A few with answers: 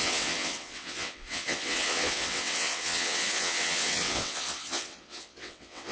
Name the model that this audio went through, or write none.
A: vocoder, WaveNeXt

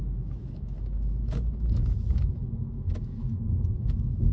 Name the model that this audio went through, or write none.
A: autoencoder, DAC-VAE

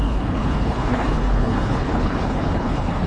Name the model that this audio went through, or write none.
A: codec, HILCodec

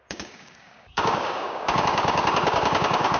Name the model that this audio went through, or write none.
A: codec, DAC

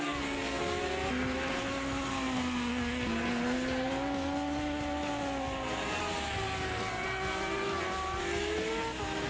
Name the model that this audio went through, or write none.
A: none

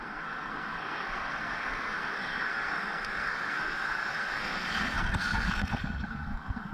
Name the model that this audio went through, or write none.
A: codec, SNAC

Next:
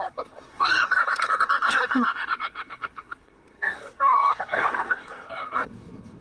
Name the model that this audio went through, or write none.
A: codec, SNAC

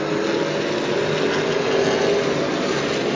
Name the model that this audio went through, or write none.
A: none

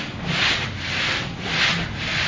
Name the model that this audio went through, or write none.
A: none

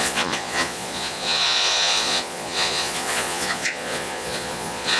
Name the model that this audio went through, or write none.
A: vocoder, Vocos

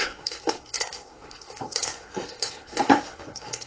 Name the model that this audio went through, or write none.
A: codec, SNAC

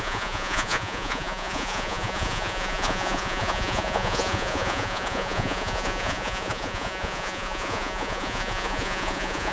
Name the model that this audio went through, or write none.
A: vocoder, Vocos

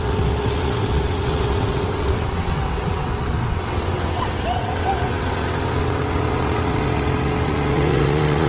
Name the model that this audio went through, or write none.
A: vocoder, WaveNeXt